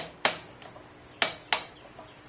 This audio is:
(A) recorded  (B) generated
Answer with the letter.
B